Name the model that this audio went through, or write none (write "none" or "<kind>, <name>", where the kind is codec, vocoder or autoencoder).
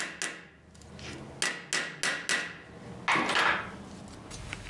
none